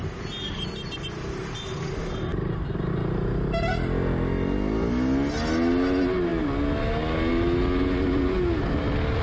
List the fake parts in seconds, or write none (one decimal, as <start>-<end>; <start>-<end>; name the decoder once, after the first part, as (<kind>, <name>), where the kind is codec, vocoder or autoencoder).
none

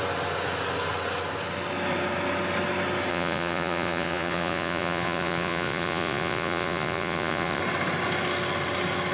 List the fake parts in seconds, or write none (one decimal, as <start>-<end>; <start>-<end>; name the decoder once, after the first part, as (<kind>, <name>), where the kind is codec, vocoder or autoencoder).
3.1-7.6 (vocoder, Vocos)